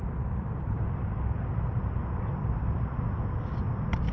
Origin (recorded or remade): remade